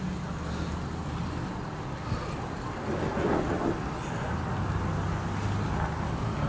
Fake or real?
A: real